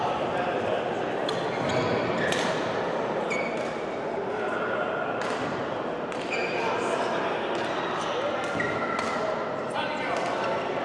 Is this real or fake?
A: real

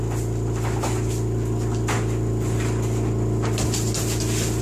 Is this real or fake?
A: real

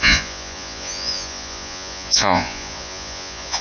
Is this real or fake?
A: fake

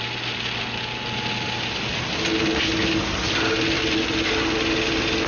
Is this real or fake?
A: real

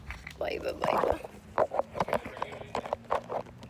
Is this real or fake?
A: real